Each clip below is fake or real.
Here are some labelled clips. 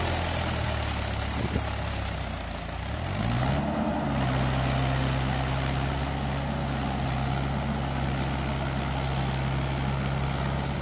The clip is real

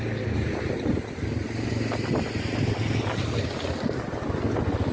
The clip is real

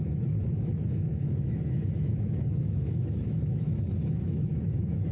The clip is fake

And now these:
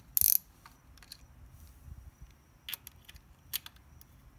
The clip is real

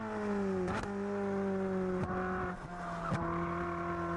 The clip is real